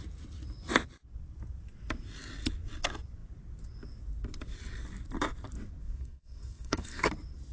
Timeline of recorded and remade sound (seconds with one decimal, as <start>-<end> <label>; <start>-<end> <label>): 0.0-5.8 recorded; 5.8-7.1 remade; 7.1-7.5 recorded